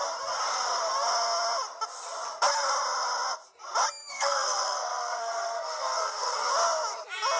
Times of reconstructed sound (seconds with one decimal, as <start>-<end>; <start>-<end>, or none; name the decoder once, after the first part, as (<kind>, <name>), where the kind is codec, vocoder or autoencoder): 4.0-6.5 (codec, SNAC)